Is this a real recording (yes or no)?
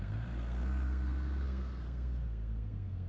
no